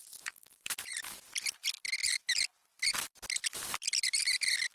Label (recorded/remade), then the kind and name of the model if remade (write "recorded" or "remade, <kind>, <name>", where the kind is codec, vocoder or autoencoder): remade, vocoder, BigVGAN v2